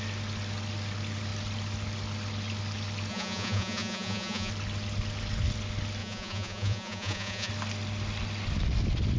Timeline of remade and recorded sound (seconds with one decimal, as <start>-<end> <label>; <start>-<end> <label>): 0.0-3.1 recorded; 3.1-4.5 remade; 4.5-6.0 recorded; 6.0-7.5 remade; 7.5-9.2 recorded